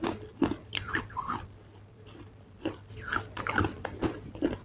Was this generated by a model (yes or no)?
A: no